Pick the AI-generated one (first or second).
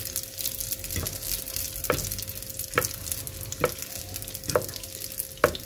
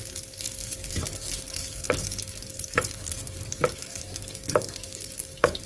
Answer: second